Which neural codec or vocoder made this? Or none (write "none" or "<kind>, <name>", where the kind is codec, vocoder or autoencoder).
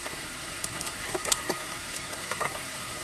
codec, SNAC